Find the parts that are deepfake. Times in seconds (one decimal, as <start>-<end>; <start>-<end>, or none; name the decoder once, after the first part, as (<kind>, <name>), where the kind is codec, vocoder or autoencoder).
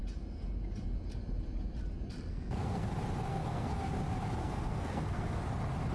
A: 2.3-2.9 (codec, SNAC); 3.3-3.9; 4.4-5.4